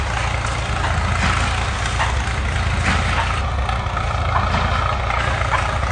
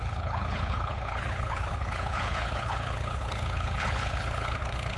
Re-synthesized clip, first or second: second